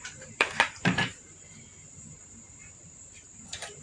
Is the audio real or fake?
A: fake